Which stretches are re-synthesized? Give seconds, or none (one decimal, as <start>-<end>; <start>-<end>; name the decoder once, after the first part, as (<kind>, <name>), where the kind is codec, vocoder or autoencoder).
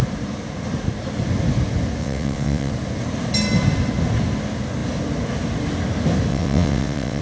2.0-2.7 (vocoder, WaveNeXt); 6.3-7.2